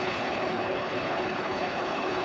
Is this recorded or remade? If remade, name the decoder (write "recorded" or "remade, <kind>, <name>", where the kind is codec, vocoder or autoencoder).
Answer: remade, codec, HILCodec